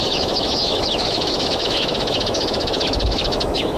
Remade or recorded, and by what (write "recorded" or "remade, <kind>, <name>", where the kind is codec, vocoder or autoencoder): remade, autoencoder, DAC-VAE